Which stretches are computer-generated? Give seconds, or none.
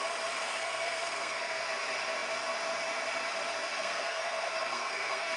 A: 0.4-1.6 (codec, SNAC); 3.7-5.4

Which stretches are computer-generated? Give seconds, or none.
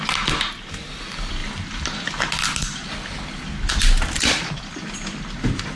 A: none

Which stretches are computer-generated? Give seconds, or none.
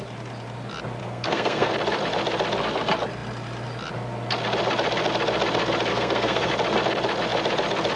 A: 1.0-1.7 (codec, SNAC); 5.9-6.5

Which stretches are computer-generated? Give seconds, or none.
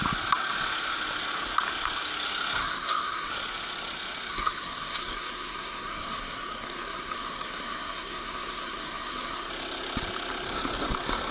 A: 2.6-3.3 (codec, SNAC); 4.3-9.5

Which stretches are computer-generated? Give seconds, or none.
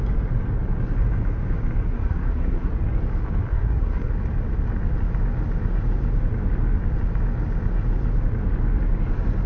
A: 1.9-2.7 (codec, SNAC); 3.5-4.1